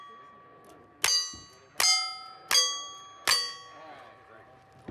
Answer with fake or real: real